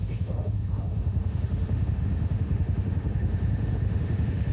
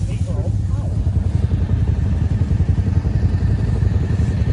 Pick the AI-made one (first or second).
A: first